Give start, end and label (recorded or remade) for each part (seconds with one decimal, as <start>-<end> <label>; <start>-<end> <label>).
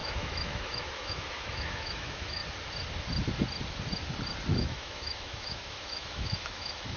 0.0-2.4 remade; 2.4-4.5 recorded; 4.5-7.0 remade